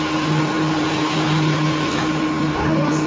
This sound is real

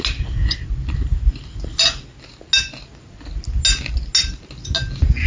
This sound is real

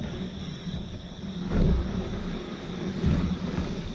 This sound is fake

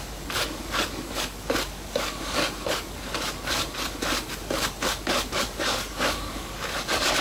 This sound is fake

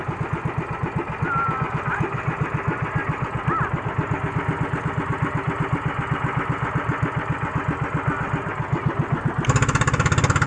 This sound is real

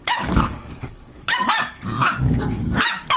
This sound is fake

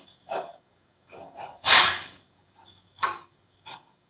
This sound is fake